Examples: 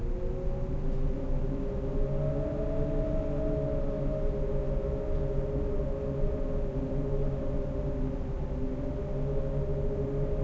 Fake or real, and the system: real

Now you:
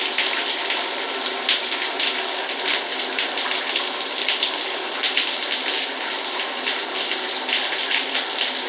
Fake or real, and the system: real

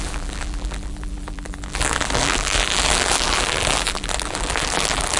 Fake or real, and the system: fake, vocoder, BigVGAN v2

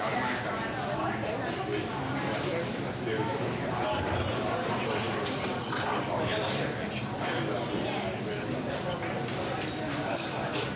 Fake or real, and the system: real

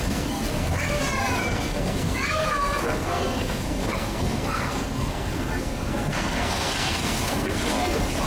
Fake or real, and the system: fake, codec, SNAC